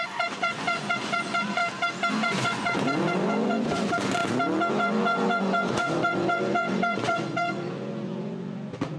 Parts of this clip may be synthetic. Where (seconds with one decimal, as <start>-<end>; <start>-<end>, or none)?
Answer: 0.0-1.6; 2.1-4.2; 4.7-9.0